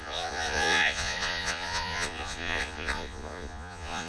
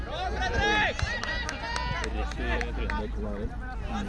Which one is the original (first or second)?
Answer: second